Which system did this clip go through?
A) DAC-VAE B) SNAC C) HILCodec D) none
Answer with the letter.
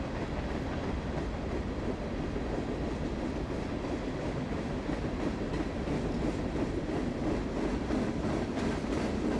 D